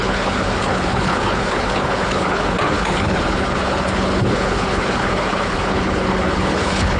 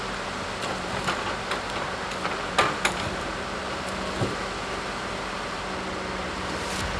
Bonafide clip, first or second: second